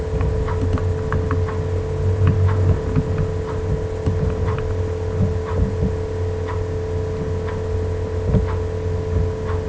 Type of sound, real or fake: real